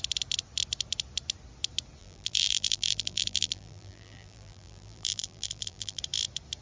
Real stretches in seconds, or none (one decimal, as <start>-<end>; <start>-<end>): 0.0-2.0; 6.0-6.6